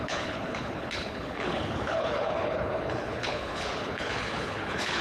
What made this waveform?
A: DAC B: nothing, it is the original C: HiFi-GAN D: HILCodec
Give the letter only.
D